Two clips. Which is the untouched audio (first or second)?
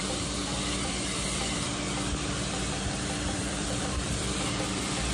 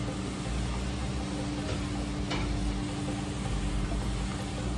second